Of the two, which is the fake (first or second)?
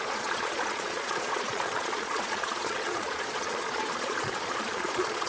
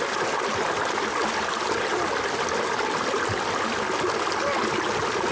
first